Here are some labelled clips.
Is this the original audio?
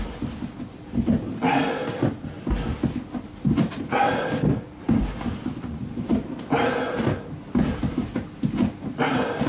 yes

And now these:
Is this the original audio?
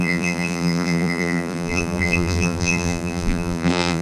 no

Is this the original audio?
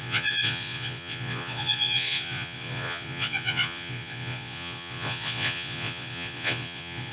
no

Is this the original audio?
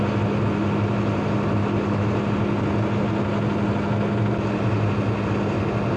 yes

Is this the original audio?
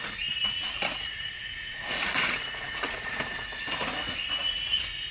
no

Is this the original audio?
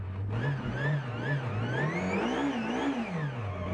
yes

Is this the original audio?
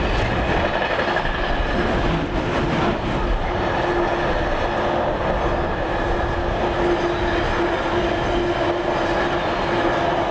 yes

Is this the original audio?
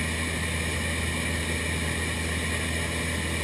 yes